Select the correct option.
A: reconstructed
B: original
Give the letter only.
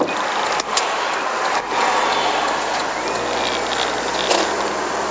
B